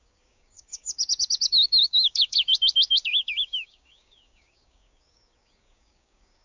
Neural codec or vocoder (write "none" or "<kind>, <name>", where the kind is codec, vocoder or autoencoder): codec, DAC